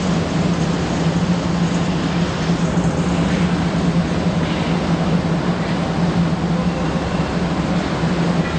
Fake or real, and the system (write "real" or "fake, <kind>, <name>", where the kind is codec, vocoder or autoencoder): real